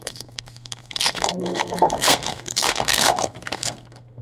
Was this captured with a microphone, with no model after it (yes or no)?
no